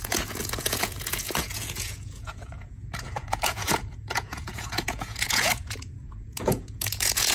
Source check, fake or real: fake